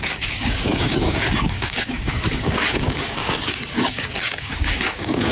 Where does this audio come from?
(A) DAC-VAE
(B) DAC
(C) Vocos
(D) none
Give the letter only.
B